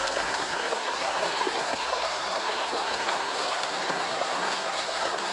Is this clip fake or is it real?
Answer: fake